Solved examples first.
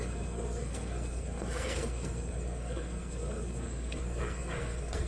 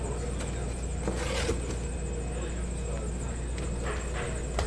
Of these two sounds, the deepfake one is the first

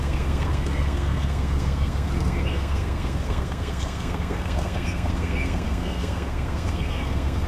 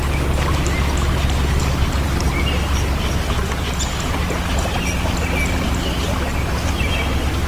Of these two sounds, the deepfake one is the first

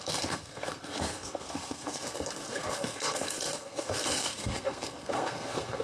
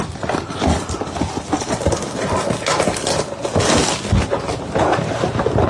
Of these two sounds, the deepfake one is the first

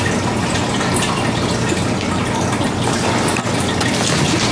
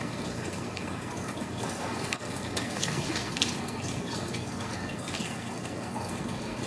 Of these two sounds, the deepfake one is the second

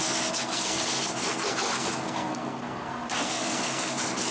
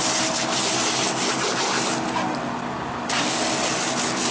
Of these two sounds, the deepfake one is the first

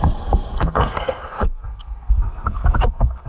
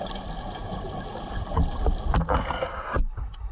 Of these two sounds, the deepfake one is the first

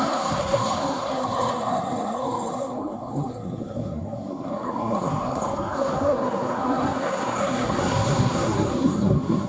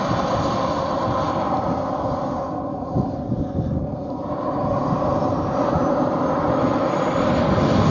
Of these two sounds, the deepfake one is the first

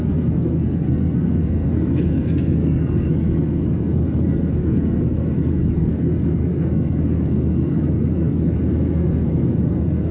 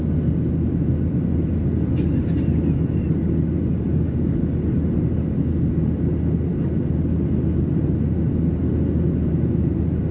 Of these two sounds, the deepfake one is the first